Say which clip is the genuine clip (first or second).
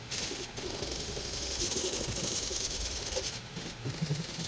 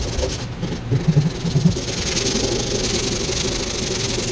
second